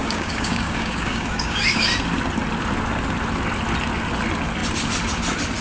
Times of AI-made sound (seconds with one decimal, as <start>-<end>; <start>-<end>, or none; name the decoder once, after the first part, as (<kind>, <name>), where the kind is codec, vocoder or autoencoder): 0.0-1.9 (codec, DAC)

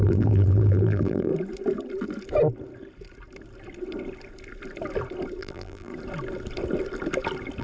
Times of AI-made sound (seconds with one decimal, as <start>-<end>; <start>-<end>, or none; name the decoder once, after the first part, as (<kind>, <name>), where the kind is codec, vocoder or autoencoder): 0.0-1.3 (vocoder, BigVGAN v2); 5.4-5.9

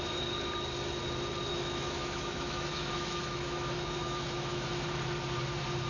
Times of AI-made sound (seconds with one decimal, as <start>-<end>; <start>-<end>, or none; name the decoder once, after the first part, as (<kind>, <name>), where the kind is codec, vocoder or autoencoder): 1.5-4.7 (autoencoder, DAC-VAE)

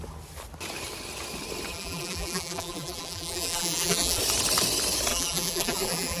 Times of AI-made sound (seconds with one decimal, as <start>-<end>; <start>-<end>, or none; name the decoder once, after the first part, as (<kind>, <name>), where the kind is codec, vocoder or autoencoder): 1.7-4.2 (vocoder, BigVGAN v2); 5.1-6.2

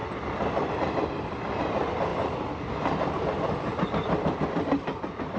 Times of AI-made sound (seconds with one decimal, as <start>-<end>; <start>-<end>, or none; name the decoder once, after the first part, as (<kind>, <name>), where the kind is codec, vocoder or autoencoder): none

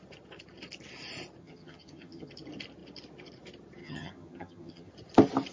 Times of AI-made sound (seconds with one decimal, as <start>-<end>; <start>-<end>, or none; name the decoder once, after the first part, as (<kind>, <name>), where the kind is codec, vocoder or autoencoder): 1.4-2.3 (vocoder, HiFi-GAN); 3.8-4.9

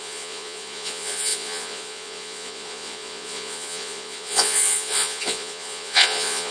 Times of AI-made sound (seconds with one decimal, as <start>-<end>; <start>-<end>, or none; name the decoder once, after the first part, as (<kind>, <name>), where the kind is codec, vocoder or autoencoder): 0.0-6.5 (vocoder, Vocos)

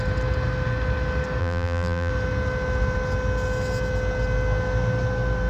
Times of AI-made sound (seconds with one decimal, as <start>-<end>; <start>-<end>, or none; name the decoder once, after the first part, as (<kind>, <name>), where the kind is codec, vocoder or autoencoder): 1.4-2.1 (vocoder, BigVGAN v2)